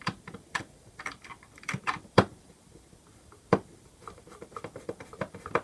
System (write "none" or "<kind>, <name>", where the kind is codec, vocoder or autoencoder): vocoder, BigVGAN v2